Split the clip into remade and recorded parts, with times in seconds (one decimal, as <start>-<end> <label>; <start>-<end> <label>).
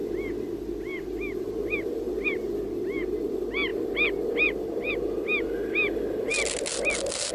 0.0-7.3 recorded